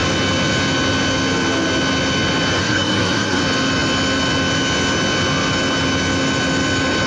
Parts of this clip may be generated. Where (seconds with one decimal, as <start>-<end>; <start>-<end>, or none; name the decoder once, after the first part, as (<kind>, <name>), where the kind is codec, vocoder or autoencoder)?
2.6-3.4 (codec, SNAC)